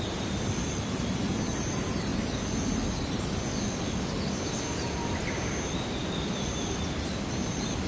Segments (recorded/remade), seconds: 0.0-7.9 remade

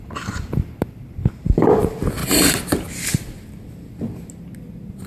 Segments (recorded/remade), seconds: 0.0-2.2 remade; 2.2-5.1 recorded